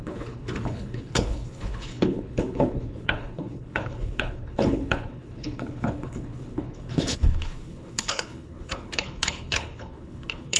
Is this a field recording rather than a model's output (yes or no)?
no